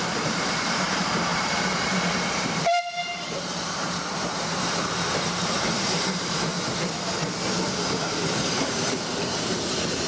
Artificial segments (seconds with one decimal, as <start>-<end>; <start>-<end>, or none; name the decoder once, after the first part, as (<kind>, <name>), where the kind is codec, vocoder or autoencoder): 0.0-6.5 (vocoder, BigVGAN v2); 8.0-10.1